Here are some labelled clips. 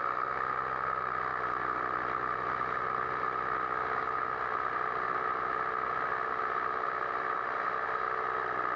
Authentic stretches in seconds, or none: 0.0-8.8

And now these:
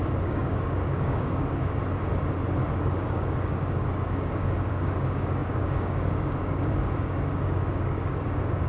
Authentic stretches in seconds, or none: 1.8-2.7

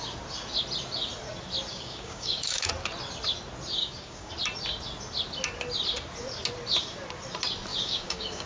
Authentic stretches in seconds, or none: 0.0-1.7; 2.7-3.8; 4.3-7.7

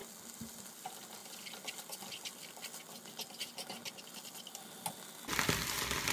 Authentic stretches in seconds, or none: 0.0-6.1

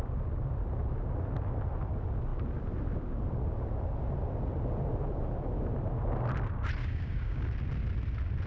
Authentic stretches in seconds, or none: 0.0-6.8; 7.4-8.5

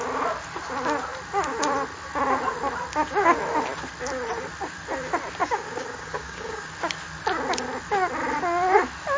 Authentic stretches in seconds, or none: 0.0-5.4; 6.7-9.2

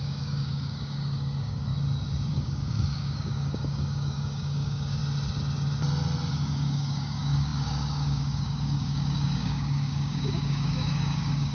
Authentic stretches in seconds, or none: 1.7-2.3; 5.0-6.3